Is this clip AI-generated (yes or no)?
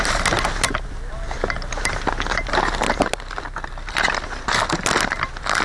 no